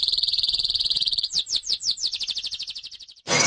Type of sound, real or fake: fake